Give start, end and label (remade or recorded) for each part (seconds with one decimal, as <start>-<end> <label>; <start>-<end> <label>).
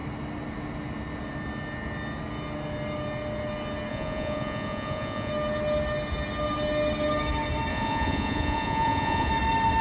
0.0-3.9 recorded; 3.9-5.3 remade; 5.3-7.7 recorded; 7.7-9.3 remade; 9.3-9.8 recorded